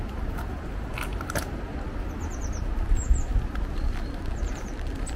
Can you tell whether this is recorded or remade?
recorded